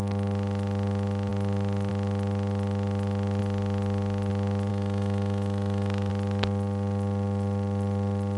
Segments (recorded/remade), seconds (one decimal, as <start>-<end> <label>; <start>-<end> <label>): 0.0-4.7 recorded; 4.7-6.1 remade; 6.1-8.4 recorded